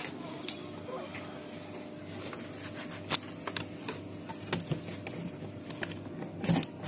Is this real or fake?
real